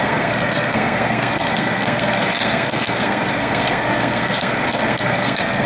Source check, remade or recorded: remade